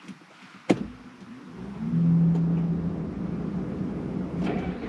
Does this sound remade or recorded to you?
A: recorded